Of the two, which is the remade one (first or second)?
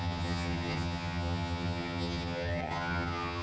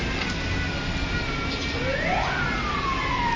first